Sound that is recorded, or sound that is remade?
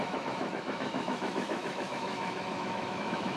remade